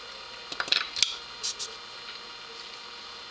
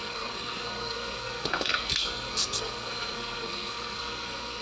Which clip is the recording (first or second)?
first